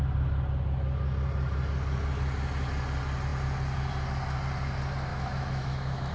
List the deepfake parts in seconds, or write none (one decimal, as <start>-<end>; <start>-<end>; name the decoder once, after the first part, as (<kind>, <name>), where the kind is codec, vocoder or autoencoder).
5.1-6.1 (autoencoder, DAC-VAE)